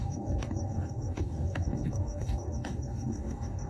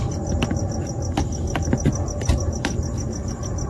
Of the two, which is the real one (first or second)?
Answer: second